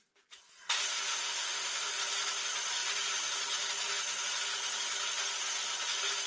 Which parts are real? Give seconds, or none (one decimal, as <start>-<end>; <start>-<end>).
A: 0.0-1.1; 1.9-6.3